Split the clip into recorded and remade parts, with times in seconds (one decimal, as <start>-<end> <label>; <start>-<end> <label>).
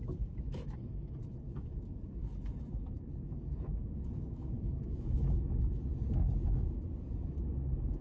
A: 0.0-5.9 remade; 5.9-7.1 recorded; 7.1-8.0 remade